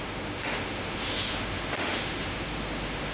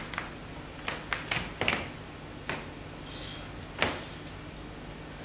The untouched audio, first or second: second